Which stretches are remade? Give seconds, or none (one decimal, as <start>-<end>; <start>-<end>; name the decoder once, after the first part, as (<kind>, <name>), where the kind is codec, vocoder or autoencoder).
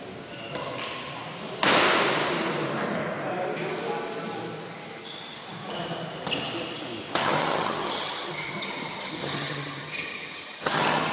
7.2-11.1 (vocoder, HiFi-GAN)